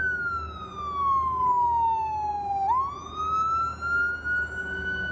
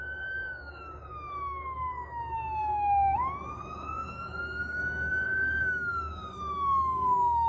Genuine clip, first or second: first